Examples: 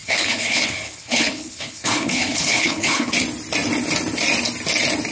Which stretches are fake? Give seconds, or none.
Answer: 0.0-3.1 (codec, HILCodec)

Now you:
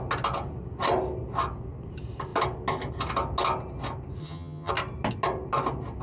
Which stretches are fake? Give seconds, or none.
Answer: 4.2-4.7 (vocoder, HiFi-GAN)